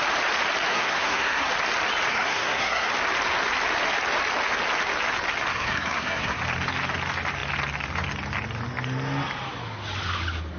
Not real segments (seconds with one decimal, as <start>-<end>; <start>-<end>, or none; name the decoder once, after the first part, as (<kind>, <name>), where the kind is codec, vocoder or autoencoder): 0.7-1.5 (codec, SNAC); 2.1-2.9; 5.5-6.4